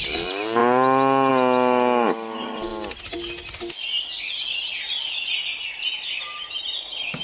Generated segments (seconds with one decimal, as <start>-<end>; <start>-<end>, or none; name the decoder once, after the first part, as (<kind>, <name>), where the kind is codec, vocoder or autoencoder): none

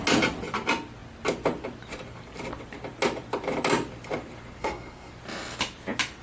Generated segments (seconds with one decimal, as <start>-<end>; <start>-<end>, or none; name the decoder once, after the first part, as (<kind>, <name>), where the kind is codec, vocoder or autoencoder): 4.6-5.1 (codec, SNAC)

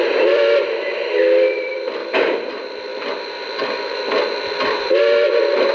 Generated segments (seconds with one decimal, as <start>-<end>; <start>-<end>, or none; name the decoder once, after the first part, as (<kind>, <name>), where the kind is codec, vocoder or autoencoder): 0.0-2.0 (vocoder, BigVGAN v2); 2.5-2.9; 4.7-5.7

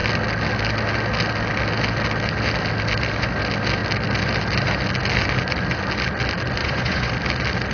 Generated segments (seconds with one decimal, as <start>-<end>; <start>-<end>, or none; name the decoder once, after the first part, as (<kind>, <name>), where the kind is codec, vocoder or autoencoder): 6.6-7.1 (vocoder, Vocos)

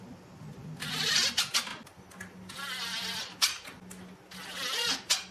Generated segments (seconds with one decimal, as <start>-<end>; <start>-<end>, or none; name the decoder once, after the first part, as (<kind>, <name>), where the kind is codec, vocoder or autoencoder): none

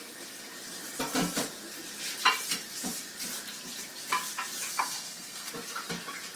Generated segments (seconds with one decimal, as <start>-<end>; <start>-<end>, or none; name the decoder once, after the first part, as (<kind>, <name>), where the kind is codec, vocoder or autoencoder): 4.7-5.5 (codec, SNAC)

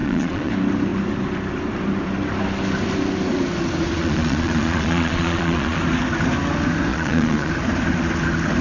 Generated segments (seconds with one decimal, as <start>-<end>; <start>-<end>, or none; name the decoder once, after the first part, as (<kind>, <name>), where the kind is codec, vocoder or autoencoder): 0.0-0.5 (vocoder, Vocos); 4.0-5.8; 6.9-7.5